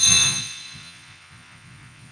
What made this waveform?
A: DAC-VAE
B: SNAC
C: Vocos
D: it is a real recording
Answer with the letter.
C